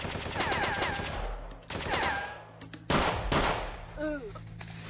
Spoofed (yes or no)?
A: no